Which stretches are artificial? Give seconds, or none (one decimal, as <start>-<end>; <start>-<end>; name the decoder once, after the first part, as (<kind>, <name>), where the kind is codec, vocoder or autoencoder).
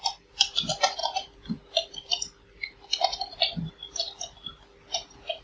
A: none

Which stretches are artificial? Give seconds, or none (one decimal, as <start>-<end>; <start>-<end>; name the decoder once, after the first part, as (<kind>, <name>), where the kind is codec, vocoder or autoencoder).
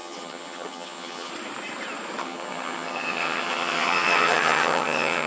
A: 0.0-1.3 (vocoder, HiFi-GAN); 2.2-5.3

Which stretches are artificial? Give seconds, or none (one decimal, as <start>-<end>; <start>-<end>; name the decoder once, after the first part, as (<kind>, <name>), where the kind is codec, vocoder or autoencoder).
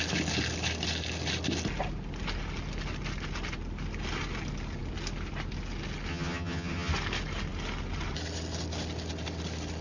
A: 6.1-6.9 (vocoder, HiFi-GAN)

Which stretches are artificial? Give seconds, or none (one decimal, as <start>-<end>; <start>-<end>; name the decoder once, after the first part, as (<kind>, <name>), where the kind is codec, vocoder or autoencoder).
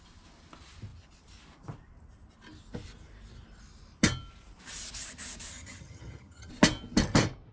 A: 5.5-6.5 (vocoder, HiFi-GAN)